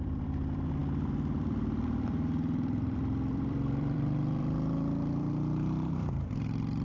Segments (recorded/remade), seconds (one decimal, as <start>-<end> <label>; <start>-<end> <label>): 0.0-6.8 remade